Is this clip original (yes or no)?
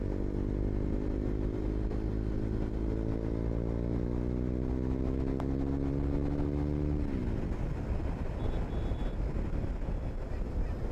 yes